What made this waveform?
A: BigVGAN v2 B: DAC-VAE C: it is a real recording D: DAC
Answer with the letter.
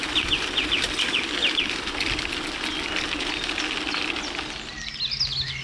C